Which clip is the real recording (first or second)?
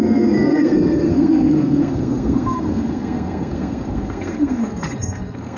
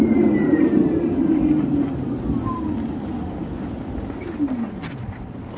second